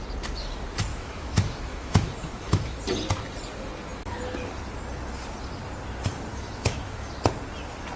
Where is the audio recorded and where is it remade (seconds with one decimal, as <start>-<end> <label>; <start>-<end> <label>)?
0.0-0.9 recorded; 0.9-2.8 remade; 2.8-6.3 recorded; 6.3-7.1 remade; 7.1-8.0 recorded